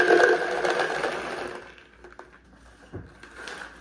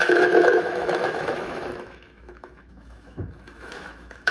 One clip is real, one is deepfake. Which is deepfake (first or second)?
second